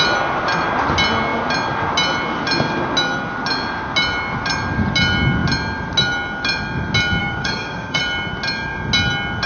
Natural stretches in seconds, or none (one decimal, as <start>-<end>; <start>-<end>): 0.0-7.2; 8.0-9.5